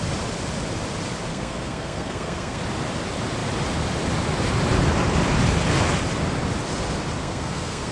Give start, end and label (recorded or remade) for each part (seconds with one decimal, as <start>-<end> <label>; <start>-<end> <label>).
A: 0.0-1.3 recorded; 1.3-2.6 remade; 2.6-7.2 recorded; 7.2-7.9 remade